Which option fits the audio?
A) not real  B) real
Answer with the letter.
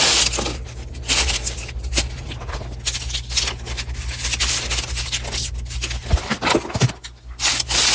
B